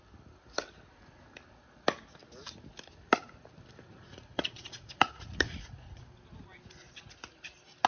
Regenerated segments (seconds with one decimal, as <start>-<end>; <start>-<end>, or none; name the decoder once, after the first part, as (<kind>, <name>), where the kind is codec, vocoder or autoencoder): 3.9-6.0 (vocoder, Vocos)

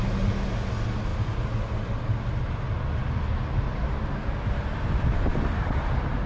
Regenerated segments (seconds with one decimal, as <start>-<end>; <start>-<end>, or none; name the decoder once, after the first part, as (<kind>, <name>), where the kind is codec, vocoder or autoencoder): none

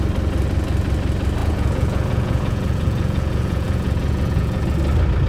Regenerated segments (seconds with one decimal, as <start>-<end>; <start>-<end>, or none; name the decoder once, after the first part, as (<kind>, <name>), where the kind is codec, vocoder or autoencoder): 1.4-4.6 (vocoder, Vocos)

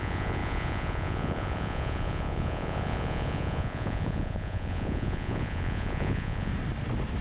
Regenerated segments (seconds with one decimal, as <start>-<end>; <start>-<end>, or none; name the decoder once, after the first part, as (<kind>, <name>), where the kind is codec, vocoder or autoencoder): 0.0-6.5 (vocoder, Vocos)